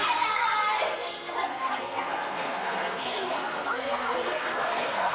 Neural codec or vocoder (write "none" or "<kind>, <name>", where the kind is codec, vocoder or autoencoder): codec, SNAC